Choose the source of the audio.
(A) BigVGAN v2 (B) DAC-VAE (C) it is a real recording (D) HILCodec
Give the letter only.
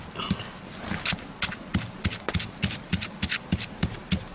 C